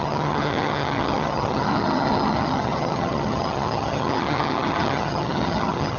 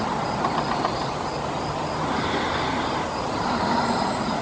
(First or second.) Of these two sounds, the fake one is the first